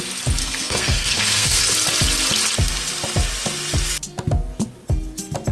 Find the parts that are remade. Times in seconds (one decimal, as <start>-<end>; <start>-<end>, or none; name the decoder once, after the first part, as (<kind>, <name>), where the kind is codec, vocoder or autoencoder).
0.4-1.6 (codec, SNAC)